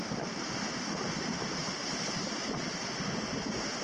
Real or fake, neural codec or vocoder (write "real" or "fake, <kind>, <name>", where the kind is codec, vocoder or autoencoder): real